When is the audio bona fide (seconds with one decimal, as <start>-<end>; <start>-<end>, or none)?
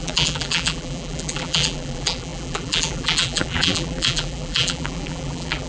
none